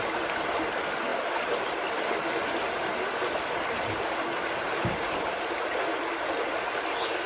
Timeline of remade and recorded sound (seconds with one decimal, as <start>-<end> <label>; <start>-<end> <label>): 0.0-7.3 recorded